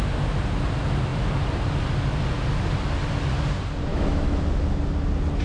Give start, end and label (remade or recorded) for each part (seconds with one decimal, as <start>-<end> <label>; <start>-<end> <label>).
0.0-3.9 recorded; 3.9-4.4 remade; 4.4-5.4 recorded